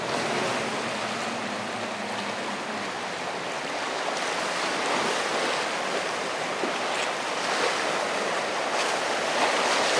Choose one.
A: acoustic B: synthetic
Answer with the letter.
A